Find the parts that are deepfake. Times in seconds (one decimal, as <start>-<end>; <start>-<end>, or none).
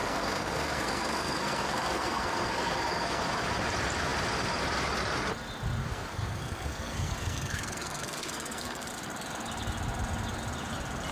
0.0-3.2; 5.8-8.9